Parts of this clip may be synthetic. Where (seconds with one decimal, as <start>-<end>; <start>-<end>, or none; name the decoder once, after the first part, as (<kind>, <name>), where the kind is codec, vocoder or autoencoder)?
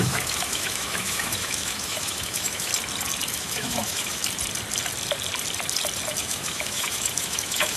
0.0-2.7 (autoencoder, DAC-VAE); 3.3-4.2; 6.2-7.8